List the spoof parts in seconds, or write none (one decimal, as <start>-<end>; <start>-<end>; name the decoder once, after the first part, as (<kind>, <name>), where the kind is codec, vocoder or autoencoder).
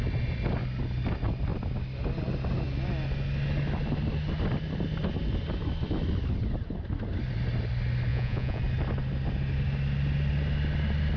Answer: 8.1-8.6 (vocoder, Vocos)